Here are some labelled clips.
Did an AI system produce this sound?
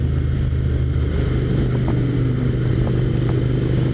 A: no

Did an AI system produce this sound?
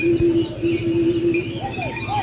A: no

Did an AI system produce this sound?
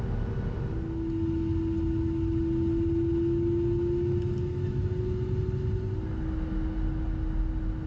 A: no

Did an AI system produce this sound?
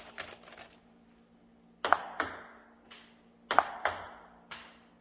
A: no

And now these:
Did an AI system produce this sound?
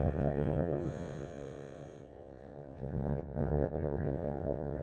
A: yes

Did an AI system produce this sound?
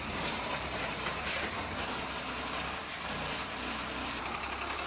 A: no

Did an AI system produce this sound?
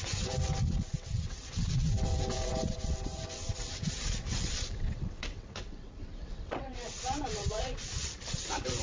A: yes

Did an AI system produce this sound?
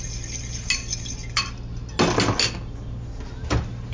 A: no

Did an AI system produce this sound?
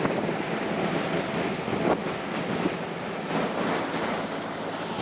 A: no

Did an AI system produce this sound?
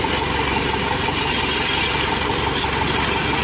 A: no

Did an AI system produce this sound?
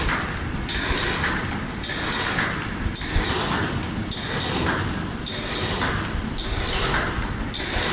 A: no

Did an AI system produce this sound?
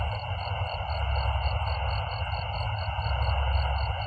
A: no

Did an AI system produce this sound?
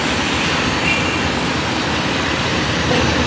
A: no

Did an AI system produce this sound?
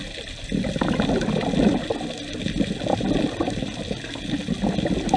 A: no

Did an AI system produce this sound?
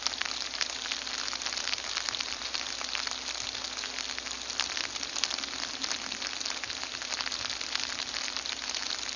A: no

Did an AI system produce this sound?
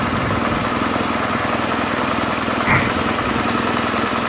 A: no